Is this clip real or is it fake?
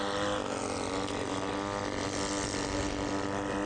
real